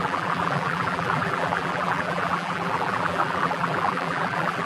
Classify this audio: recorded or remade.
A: remade